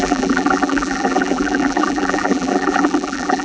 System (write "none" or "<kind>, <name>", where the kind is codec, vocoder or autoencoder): vocoder, BigVGAN v2